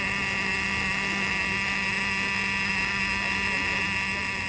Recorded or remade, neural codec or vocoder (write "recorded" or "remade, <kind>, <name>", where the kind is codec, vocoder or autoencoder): recorded